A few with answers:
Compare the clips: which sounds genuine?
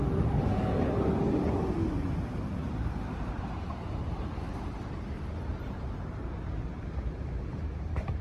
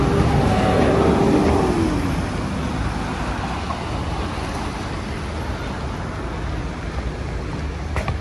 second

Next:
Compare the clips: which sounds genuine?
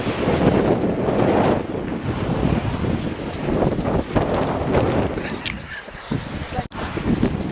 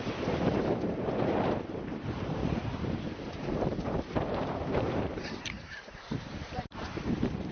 first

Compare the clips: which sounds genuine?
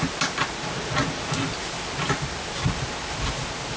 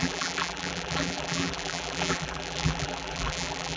first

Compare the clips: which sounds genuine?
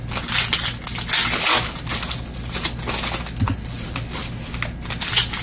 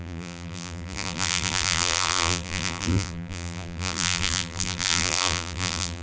first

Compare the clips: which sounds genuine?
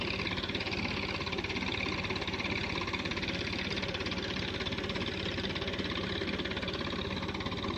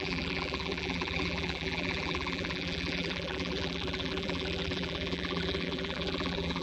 first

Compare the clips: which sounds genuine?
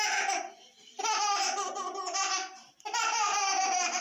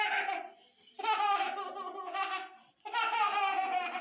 second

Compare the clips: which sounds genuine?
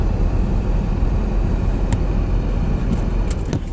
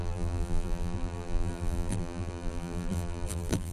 first